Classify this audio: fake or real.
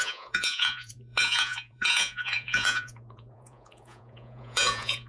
fake